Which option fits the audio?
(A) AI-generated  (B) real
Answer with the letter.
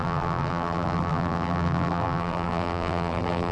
A